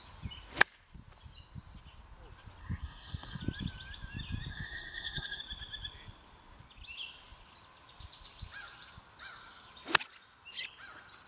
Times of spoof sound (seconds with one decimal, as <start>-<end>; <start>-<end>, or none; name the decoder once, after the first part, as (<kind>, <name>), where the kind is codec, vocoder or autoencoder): 2.6-3.4 (codec, SNAC); 4.5-5.4